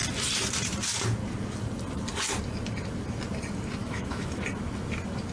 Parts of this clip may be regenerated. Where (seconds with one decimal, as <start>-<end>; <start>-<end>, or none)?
3.8-4.4